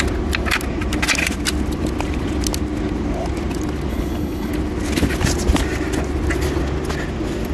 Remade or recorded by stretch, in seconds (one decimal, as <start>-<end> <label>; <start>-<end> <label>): 0.0-3.9 recorded; 3.9-4.5 remade; 4.5-7.5 recorded